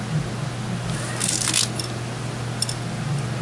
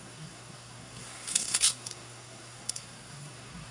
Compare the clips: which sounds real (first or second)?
first